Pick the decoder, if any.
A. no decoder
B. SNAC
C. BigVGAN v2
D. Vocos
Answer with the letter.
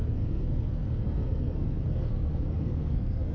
B